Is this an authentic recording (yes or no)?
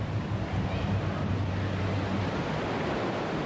yes